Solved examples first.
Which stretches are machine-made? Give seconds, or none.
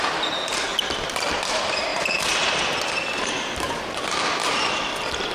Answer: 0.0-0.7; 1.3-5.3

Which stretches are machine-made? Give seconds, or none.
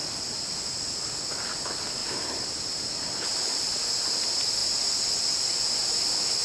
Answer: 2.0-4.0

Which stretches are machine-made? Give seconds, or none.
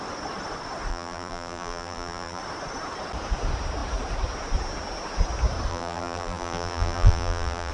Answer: 0.9-2.4; 5.7-7.7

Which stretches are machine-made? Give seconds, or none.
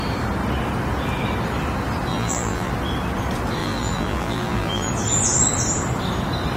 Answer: 2.1-2.7; 3.6-4.9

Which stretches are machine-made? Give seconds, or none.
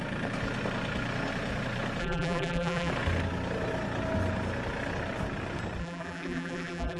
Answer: 2.0-2.9; 5.8-7.0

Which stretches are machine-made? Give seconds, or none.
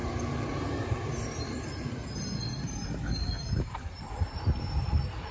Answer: 0.0-2.0; 4.1-5.3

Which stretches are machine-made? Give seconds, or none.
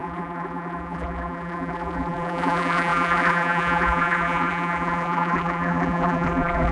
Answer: 0.0-6.7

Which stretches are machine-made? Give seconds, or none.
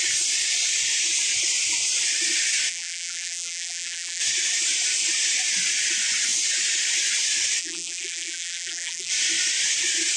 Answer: 2.7-4.2; 7.6-9.1